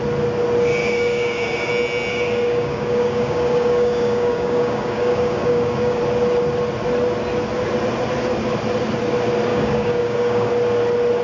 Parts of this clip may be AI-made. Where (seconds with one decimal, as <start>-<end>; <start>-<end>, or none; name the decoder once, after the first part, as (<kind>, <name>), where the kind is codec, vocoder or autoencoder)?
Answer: 0.8-1.7 (codec, DAC); 2.1-6.0; 9.5-10.5